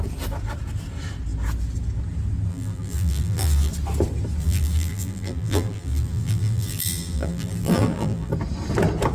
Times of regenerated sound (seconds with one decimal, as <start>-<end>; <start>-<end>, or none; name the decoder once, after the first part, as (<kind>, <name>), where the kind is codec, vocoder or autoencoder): 2.5-3.7 (vocoder, BigVGAN v2); 4.4-8.3